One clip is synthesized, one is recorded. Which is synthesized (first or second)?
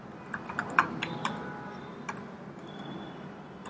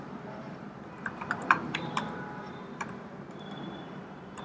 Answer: second